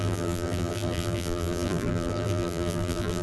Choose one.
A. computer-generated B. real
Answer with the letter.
A